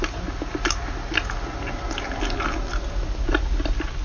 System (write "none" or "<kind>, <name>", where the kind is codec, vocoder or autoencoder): none